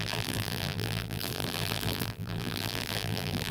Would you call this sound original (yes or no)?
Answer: no